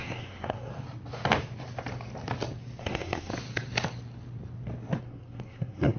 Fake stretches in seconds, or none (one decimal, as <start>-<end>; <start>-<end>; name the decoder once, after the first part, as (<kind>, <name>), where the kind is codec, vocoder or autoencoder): 0.0-0.7 (codec, SNAC); 2.8-3.3; 5.0-6.0